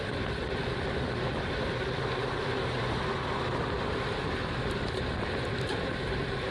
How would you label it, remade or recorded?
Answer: recorded